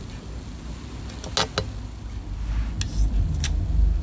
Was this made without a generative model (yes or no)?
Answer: yes